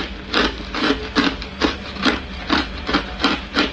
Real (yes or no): yes